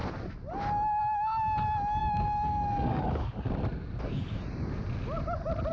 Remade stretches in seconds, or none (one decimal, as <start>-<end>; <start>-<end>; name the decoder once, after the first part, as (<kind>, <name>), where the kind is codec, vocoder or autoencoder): 2.0-3.5 (codec, DAC)